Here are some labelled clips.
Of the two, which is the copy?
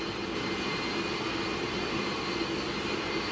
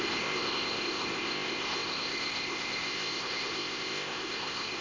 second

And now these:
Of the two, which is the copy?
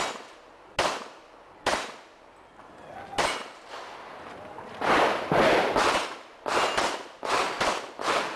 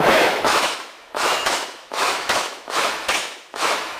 second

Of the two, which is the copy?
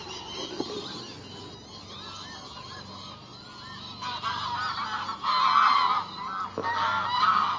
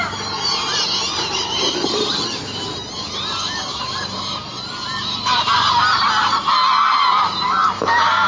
second